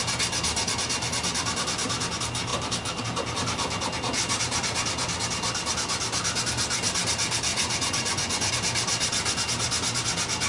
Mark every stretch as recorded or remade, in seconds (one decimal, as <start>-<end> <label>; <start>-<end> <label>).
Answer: 0.0-7.5 recorded; 7.5-8.5 remade; 8.5-10.5 recorded